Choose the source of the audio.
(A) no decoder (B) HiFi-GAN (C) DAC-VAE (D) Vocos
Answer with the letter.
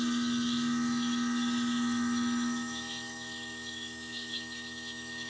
C